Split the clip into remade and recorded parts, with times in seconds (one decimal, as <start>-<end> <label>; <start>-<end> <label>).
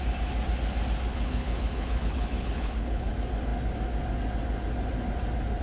0.0-1.1 recorded; 1.1-3.1 remade; 3.1-5.6 recorded